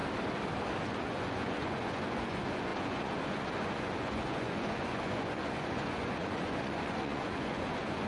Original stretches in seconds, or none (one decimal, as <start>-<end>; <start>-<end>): 0.0-0.8